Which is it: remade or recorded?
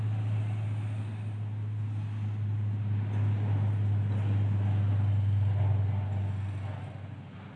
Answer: recorded